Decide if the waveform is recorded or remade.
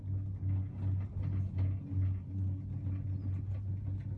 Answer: recorded